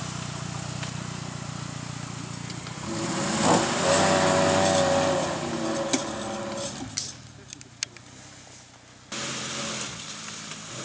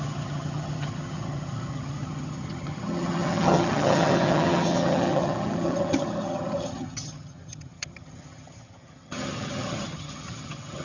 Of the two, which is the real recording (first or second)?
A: first